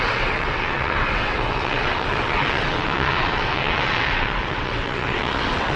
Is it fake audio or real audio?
fake